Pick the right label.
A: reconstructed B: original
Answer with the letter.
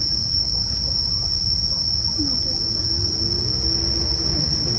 B